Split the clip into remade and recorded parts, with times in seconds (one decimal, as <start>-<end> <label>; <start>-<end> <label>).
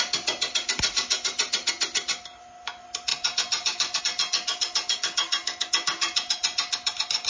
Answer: 0.0-7.3 recorded